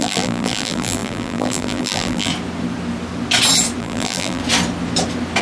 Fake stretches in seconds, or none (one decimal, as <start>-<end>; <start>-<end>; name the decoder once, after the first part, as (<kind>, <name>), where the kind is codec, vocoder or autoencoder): 0.0-2.3 (vocoder, BigVGAN v2); 3.8-4.4